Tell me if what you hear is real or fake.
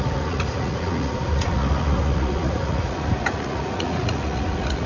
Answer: fake